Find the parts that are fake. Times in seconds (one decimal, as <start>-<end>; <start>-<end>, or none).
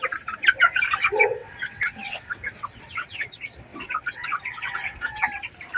1.4-3.3; 3.7-5.3